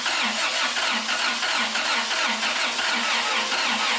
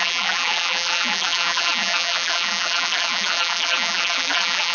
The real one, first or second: first